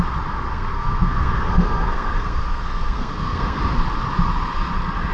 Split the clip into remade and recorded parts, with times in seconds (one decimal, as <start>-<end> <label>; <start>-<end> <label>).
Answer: 0.0-0.5 recorded; 0.5-3.6 remade; 3.6-5.1 recorded

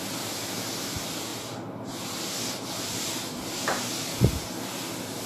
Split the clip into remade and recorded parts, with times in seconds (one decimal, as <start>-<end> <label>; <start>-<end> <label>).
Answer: 0.0-5.3 recorded

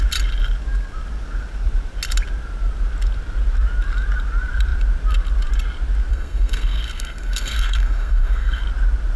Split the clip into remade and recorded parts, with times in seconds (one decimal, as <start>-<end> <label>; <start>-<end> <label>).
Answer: 0.0-6.1 recorded; 6.1-8.6 remade; 8.6-9.2 recorded

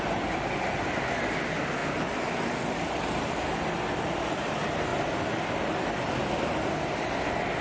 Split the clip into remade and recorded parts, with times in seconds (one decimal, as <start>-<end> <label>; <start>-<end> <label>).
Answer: 0.0-7.6 recorded

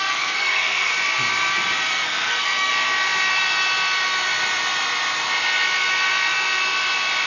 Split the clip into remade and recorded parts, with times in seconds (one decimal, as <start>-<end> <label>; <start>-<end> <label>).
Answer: 0.0-0.9 remade; 0.9-1.9 recorded; 1.9-2.7 remade; 2.7-7.3 recorded